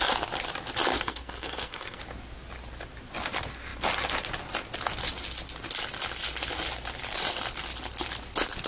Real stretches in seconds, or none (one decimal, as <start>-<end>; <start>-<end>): 0.0-0.9; 2.0-8.7

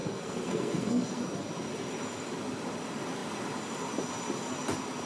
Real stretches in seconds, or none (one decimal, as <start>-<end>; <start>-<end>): 1.2-5.1